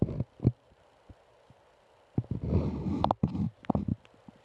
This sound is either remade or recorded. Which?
recorded